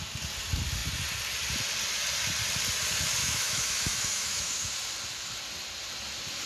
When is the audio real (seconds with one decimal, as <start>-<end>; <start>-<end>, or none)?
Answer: 0.0-3.2; 4.7-6.5